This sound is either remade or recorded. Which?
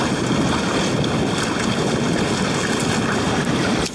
recorded